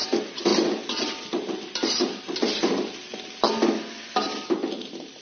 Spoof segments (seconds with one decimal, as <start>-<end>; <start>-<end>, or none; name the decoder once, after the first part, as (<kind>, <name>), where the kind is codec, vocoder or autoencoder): 0.0-0.5 (vocoder, BigVGAN v2); 2.2-2.6; 4.8-5.2

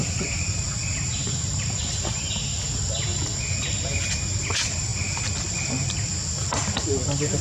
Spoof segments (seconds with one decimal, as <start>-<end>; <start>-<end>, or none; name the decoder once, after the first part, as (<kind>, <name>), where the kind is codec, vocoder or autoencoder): 4.4-7.4 (vocoder, BigVGAN v2)

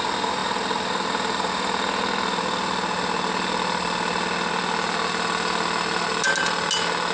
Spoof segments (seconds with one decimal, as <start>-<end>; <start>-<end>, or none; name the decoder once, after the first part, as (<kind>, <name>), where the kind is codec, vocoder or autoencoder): none